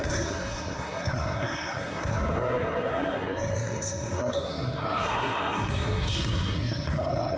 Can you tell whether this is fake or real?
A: fake